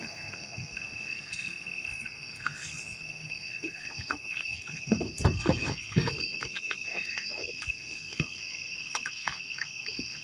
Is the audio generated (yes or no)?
yes